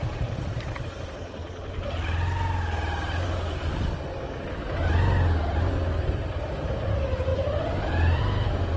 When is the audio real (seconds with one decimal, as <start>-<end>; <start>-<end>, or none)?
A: 1.4-6.0